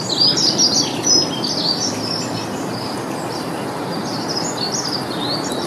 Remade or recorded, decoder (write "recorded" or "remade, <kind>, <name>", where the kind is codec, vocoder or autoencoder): recorded